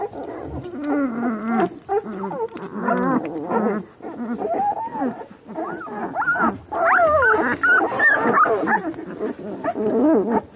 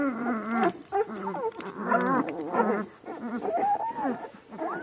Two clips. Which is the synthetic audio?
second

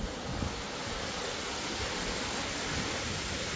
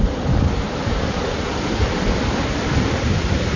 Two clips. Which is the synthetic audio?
second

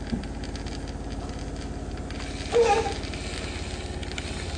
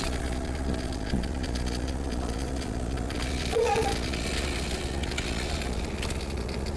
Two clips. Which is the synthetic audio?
second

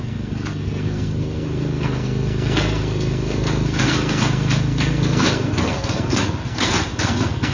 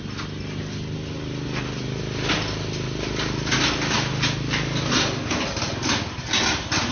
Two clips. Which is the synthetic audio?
first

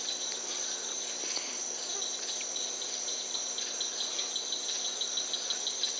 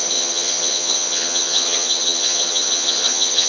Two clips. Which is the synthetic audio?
second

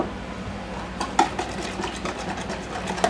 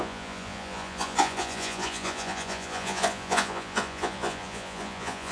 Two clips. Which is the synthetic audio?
second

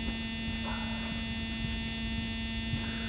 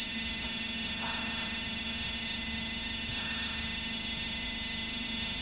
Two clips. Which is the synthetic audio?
second